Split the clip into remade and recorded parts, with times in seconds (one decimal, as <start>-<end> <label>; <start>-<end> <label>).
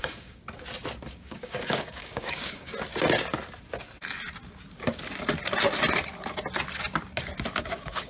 0.0-0.4 remade; 0.4-1.1 recorded; 1.1-2.7 remade; 2.7-7.6 recorded; 7.6-8.1 remade